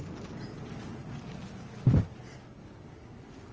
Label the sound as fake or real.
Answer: real